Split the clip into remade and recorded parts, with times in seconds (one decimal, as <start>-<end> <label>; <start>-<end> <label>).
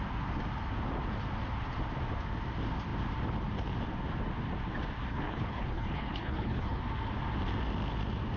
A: 0.0-5.1 recorded; 5.1-6.8 remade; 6.8-8.4 recorded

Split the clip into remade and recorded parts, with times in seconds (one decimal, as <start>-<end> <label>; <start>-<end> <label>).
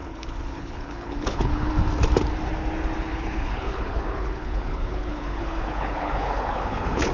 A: 0.0-1.7 remade; 1.7-3.1 recorded; 3.1-7.1 remade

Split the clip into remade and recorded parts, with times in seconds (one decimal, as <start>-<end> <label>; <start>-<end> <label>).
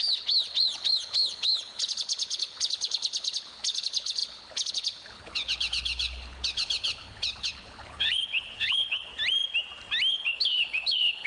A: 0.0-9.1 remade; 9.1-10.1 recorded; 10.1-11.3 remade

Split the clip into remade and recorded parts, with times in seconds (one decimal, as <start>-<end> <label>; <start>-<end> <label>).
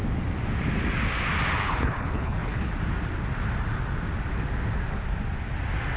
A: 0.0-1.6 recorded; 1.6-2.7 remade; 2.7-6.0 recorded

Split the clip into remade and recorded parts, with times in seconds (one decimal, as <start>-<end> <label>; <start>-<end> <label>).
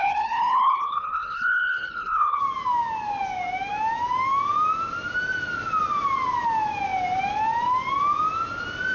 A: 0.0-2.4 remade; 2.4-8.9 recorded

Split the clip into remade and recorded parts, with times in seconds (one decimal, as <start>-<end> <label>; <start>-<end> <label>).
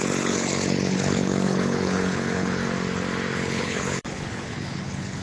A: 0.0-2.6 remade; 2.6-3.4 recorded; 3.4-5.2 remade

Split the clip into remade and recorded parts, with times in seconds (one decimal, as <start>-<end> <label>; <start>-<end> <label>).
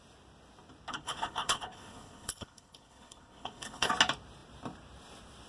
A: 0.0-0.9 recorded; 0.9-3.9 remade; 3.9-5.5 recorded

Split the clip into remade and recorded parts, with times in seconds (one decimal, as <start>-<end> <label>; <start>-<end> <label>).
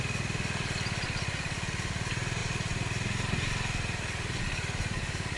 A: 0.0-5.4 recorded